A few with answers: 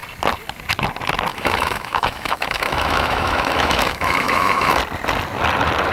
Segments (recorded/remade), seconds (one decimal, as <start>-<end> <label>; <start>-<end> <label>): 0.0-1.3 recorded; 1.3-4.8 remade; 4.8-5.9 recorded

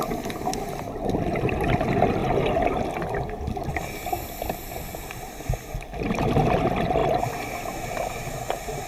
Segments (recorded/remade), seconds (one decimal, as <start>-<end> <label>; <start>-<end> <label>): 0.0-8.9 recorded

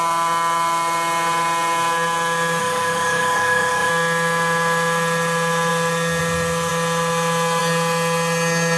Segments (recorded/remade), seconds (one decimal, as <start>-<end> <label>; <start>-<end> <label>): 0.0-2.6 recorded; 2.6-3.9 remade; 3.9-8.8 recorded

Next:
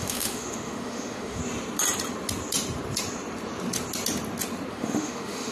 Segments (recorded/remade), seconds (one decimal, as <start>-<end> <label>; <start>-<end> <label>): 0.0-1.4 remade; 1.4-4.7 recorded; 4.7-5.5 remade

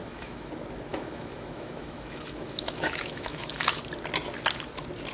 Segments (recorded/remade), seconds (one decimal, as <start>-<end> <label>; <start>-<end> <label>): 0.0-0.5 remade; 0.5-0.9 recorded; 0.9-3.8 remade; 3.8-5.1 recorded

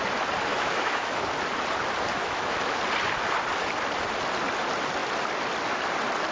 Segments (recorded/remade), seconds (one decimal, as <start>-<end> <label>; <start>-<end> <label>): 0.0-0.5 recorded; 0.5-1.3 remade; 1.3-2.1 recorded; 2.1-2.8 remade; 2.8-6.3 recorded